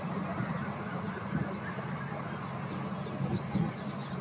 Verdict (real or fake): real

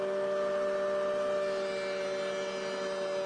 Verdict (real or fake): real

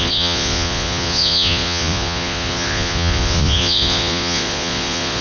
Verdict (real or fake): fake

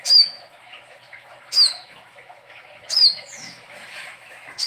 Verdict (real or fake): fake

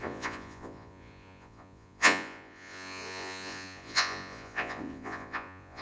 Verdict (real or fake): fake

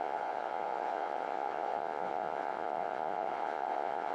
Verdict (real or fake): fake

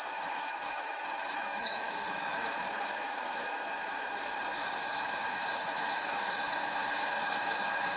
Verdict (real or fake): fake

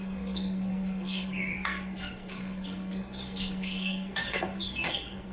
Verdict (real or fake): fake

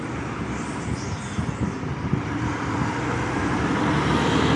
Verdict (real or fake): real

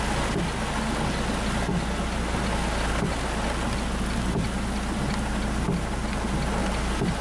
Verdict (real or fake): real